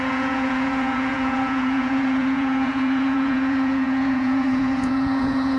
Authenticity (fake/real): fake